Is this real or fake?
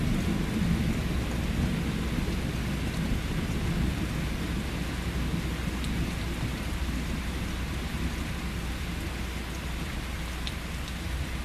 real